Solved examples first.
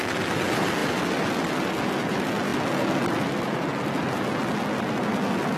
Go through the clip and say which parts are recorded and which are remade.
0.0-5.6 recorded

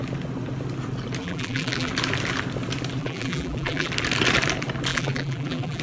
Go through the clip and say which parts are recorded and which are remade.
0.0-1.2 recorded; 1.2-1.9 remade; 1.9-3.0 recorded; 3.0-3.9 remade; 3.9-4.9 recorded; 4.9-5.8 remade